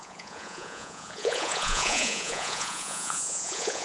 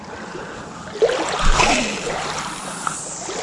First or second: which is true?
second